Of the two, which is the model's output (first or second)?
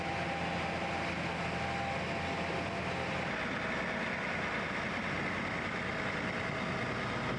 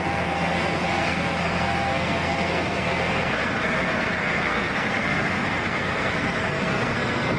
second